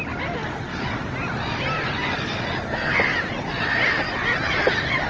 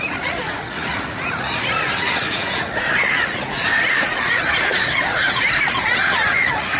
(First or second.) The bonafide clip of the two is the first